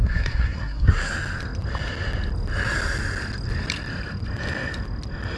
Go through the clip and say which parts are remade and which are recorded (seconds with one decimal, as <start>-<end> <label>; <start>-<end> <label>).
0.0-1.1 remade; 1.1-5.4 recorded